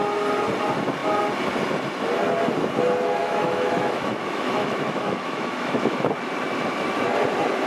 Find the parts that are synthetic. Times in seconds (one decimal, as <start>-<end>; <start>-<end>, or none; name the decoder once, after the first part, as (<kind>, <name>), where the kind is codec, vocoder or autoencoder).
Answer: 3.2-6.1 (autoencoder, DAC-VAE)